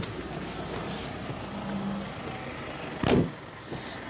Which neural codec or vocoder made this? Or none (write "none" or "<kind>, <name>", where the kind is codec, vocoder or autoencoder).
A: none